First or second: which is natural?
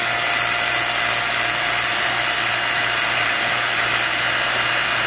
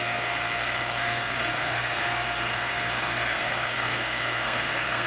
first